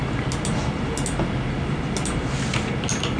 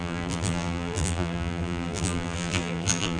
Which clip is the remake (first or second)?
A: second